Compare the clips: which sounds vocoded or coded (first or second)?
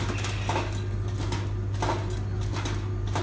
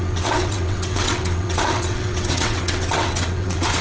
second